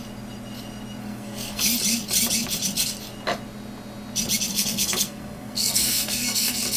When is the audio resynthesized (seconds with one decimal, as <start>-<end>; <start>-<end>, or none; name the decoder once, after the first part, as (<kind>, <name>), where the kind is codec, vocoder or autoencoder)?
1.0-1.7 (codec, SNAC); 4.5-6.8